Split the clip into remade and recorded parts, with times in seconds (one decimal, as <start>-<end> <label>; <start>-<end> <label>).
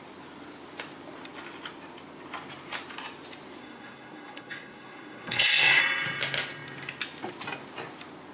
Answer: 0.0-3.6 recorded; 3.6-5.8 remade; 5.8-8.3 recorded